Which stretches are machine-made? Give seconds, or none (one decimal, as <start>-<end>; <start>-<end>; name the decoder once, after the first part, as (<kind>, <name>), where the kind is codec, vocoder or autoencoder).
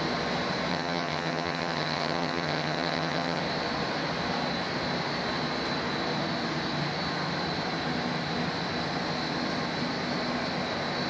0.7-3.4 (vocoder, HiFi-GAN)